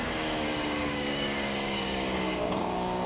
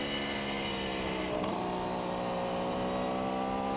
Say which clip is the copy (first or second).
first